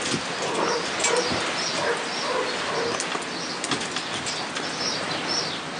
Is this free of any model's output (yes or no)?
yes